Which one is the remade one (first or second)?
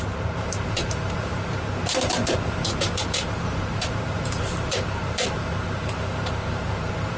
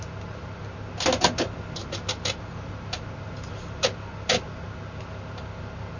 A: first